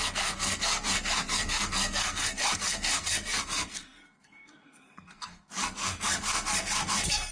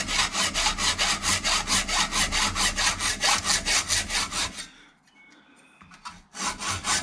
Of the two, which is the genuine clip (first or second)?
second